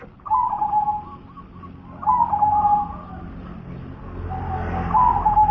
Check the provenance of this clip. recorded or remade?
recorded